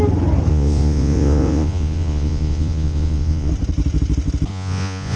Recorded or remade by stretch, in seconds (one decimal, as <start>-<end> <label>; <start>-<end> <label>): 0.0-0.5 recorded; 0.5-3.5 remade; 3.5-4.5 recorded; 4.5-5.2 remade